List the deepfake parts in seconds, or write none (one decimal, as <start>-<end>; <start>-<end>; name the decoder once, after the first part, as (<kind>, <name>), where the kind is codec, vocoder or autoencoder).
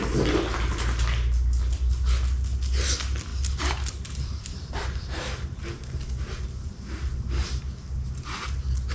none